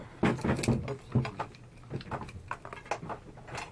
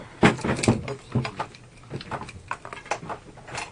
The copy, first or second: second